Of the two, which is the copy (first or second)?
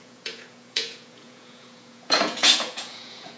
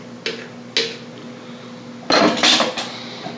first